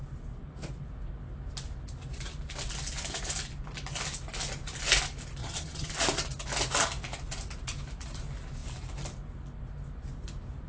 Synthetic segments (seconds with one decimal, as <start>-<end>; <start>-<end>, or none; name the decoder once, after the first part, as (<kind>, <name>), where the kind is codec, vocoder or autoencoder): 5.4-5.9 (vocoder, HiFi-GAN)